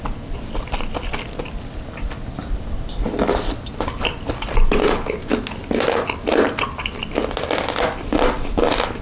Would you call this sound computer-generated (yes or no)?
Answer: no